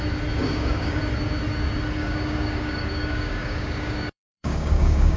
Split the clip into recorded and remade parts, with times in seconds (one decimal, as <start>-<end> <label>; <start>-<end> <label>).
0.0-0.4 recorded; 0.4-1.0 remade; 1.0-2.0 recorded; 2.0-5.2 remade

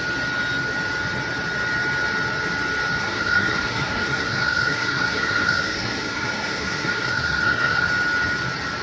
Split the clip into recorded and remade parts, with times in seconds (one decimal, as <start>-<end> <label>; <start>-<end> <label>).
0.0-3.0 recorded; 3.0-7.9 remade; 7.9-8.8 recorded

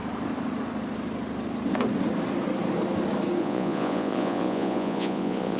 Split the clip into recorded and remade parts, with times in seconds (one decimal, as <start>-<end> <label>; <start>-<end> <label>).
0.0-3.4 recorded; 3.4-5.6 remade

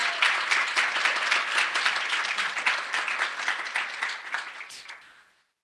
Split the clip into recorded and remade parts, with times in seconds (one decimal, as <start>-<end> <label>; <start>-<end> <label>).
0.0-5.6 recorded